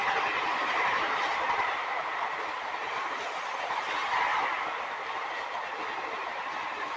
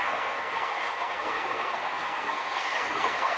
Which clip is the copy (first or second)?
second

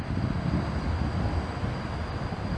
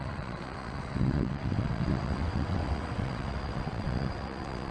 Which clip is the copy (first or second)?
second